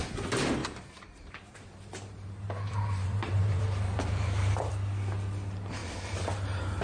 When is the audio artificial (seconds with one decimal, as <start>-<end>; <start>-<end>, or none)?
0.6-4.7; 5.8-6.8